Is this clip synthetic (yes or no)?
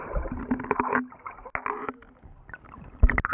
no